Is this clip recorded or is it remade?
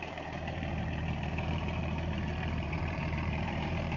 remade